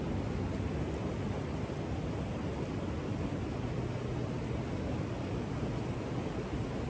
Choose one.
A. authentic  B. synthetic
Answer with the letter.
A